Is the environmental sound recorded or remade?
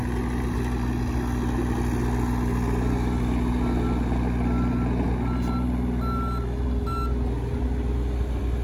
recorded